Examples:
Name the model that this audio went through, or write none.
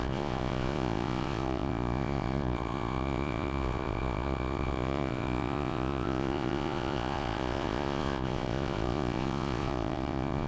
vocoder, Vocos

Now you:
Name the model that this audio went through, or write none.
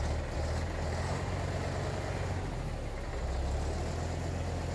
none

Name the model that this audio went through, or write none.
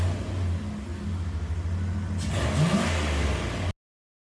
none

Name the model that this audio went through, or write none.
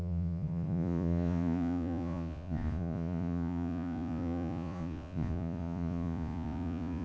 vocoder, Vocos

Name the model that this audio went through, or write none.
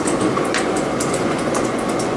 vocoder, Vocos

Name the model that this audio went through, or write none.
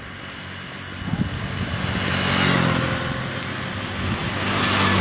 none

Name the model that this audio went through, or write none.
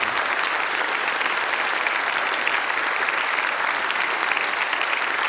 none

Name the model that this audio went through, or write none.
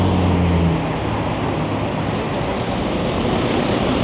none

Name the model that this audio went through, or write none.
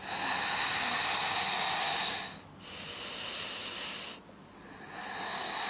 none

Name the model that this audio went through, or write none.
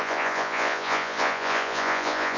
vocoder, Vocos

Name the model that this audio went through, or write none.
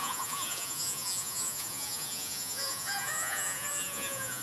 vocoder, Vocos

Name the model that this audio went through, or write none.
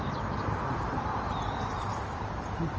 none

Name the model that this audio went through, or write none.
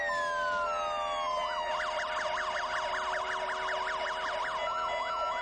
none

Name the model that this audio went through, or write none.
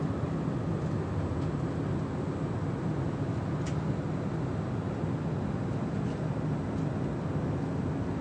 none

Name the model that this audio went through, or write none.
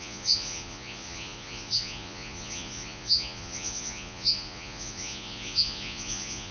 vocoder, Vocos